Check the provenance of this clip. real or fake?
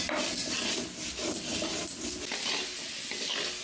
real